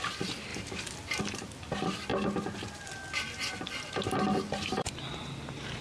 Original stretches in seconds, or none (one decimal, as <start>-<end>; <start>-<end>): 0.0-5.8